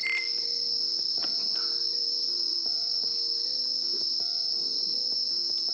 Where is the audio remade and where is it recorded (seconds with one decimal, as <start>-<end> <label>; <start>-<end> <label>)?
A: 0.0-2.2 recorded; 2.2-3.1 remade; 3.1-4.5 recorded; 4.5-4.9 remade; 4.9-5.7 recorded